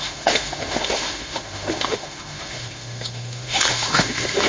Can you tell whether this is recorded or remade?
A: remade